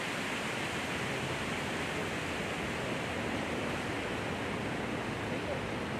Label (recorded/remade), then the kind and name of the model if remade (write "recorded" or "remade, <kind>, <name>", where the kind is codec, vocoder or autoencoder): recorded